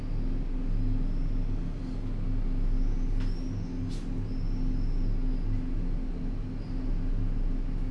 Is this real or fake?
real